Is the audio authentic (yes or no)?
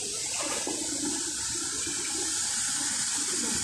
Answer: yes